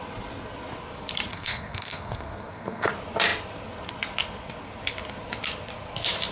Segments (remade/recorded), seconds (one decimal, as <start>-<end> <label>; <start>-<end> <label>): 0.0-1.3 recorded; 1.3-2.9 remade; 2.9-6.3 recorded